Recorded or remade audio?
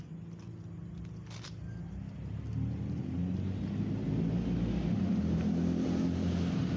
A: recorded